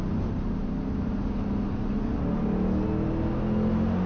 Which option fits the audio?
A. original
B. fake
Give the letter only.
A